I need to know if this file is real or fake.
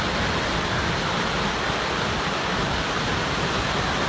real